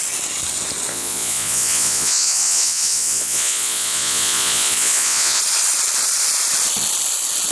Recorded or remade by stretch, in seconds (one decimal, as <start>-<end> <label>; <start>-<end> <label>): 0.0-0.9 recorded; 0.9-5.4 remade; 5.4-7.5 recorded